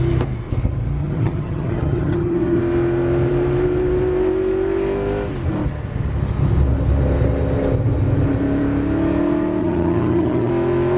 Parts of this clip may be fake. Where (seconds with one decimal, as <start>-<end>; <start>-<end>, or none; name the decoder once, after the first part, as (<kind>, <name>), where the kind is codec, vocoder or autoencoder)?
1.0-2.6 (vocoder, HiFi-GAN); 9.6-10.5